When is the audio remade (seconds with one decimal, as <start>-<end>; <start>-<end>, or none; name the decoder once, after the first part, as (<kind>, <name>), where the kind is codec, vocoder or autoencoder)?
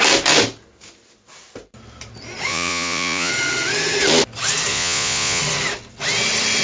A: 2.5-3.3 (vocoder, Vocos); 4.7-5.4